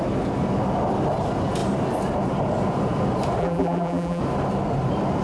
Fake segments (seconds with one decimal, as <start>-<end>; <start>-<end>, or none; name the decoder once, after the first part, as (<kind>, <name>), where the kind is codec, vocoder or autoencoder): 3.4-4.2 (vocoder, BigVGAN v2)